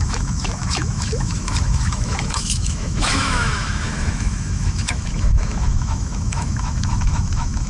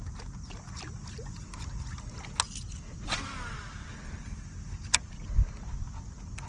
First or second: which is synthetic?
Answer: first